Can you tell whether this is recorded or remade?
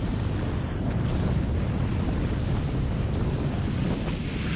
recorded